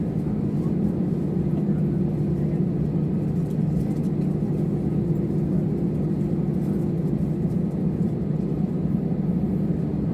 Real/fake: real